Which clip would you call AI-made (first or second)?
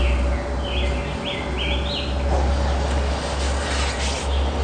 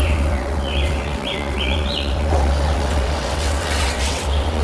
second